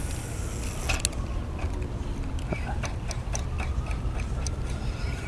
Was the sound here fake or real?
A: real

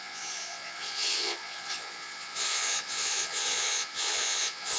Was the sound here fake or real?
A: fake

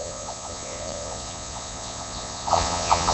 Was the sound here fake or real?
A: fake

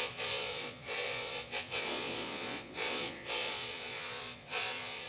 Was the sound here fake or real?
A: fake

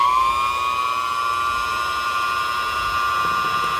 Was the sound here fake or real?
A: real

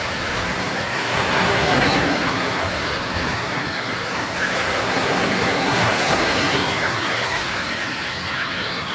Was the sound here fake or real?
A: fake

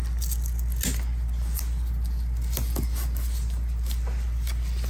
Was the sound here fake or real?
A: real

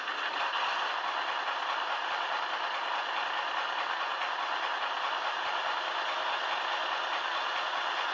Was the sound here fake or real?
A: real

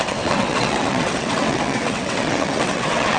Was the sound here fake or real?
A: fake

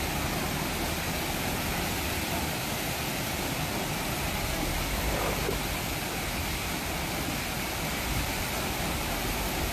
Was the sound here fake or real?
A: real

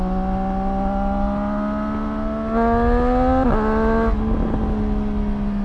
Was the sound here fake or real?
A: real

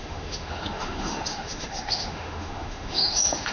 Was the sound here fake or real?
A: fake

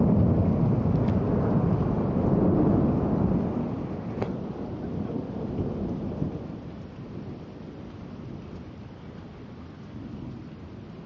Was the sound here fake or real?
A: real